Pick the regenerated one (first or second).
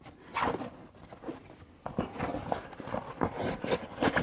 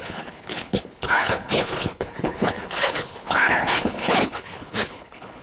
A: second